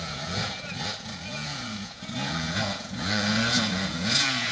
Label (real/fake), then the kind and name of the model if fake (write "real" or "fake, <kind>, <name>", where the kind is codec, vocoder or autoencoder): fake, vocoder, Vocos